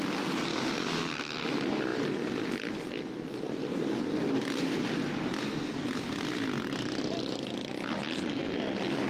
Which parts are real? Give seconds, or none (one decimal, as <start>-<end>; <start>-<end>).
0.0-0.5; 1.4-9.1